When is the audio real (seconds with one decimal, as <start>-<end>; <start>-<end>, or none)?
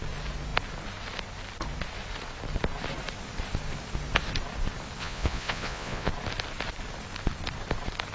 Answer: 0.0-5.0; 6.1-8.1